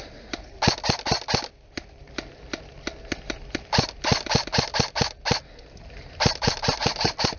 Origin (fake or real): real